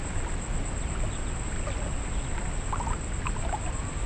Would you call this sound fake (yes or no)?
no